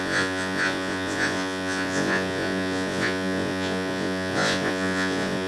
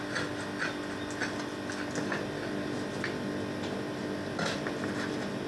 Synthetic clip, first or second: first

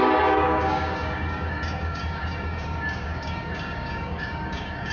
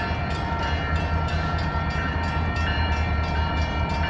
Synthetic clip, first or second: first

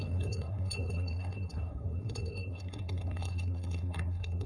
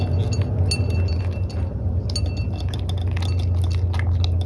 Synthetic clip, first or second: first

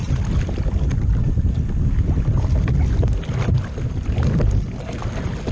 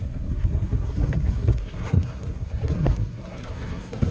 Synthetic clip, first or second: second